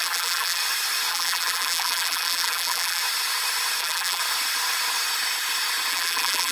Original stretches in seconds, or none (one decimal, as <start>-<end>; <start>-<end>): 0.6-1.1; 3.0-3.8; 4.2-5.9